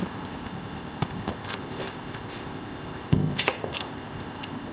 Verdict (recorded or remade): remade